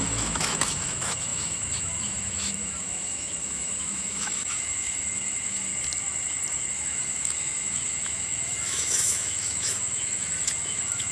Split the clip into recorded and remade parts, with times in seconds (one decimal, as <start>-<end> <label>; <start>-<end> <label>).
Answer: 0.0-5.7 remade; 5.7-6.7 recorded; 6.7-11.1 remade